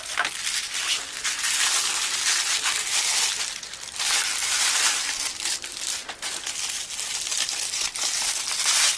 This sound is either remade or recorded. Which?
recorded